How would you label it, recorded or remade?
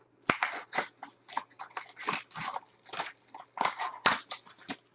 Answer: recorded